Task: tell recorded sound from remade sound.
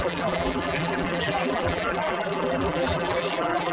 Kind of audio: remade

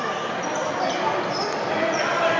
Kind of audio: recorded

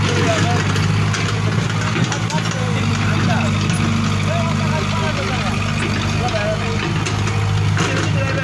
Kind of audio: recorded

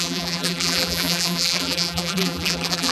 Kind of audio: remade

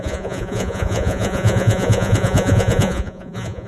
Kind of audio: remade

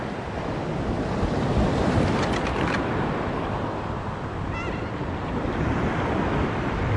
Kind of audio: recorded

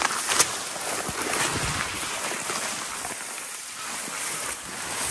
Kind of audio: recorded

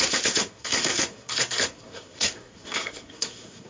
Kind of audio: remade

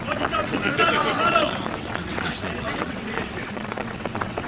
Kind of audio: remade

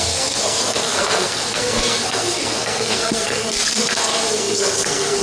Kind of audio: remade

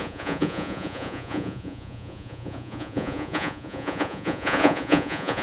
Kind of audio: remade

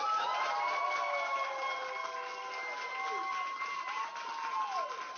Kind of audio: recorded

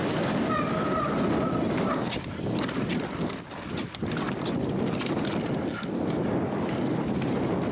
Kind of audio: recorded